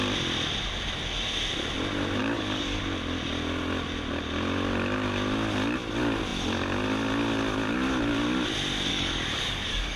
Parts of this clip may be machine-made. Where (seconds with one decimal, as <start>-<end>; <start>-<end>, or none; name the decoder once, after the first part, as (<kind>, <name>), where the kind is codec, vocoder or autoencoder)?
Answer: 2.2-2.8 (codec, DAC); 8.9-10.0